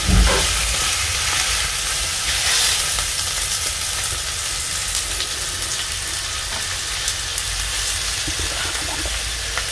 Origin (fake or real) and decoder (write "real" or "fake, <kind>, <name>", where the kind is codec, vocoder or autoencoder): real